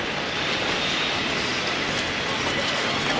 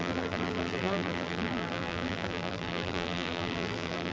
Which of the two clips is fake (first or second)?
second